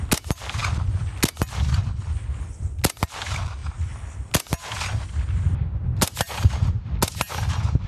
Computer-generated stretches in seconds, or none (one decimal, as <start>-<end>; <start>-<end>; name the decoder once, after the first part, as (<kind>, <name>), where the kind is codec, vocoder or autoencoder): 5.8-6.9 (vocoder, BigVGAN v2)